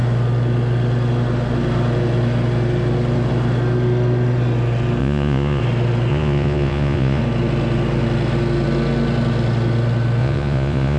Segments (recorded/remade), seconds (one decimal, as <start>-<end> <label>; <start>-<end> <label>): 0.0-5.0 recorded; 5.0-5.6 remade; 5.6-6.1 recorded; 6.1-7.2 remade; 7.2-10.2 recorded; 10.2-11.0 remade